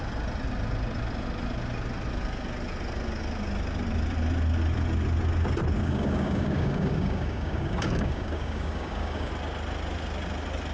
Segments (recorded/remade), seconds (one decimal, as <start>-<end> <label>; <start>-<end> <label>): 0.0-5.8 recorded; 5.8-9.3 remade; 9.3-10.7 recorded